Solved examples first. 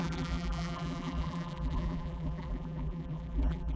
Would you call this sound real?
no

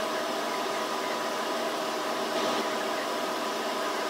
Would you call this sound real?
no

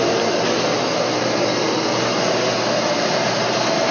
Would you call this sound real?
yes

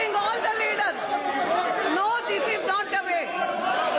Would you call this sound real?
yes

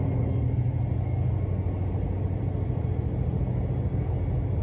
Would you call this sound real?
yes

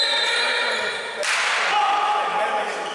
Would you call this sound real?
yes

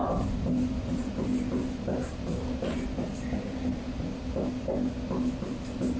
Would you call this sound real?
yes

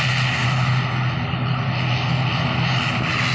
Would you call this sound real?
yes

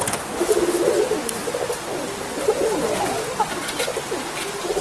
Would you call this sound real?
yes